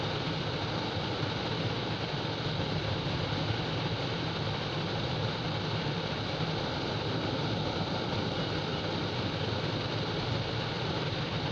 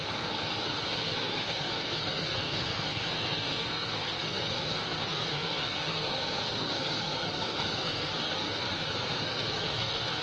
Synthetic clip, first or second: second